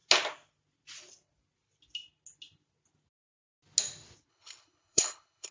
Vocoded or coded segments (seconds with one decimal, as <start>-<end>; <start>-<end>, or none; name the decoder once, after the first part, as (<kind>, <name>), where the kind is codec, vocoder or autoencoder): 4.3-5.5 (codec, HILCodec)